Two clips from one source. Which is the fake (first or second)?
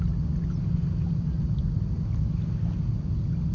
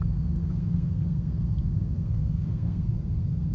second